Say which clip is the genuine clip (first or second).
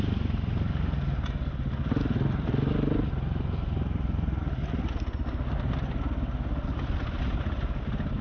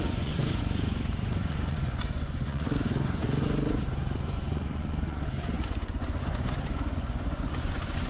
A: first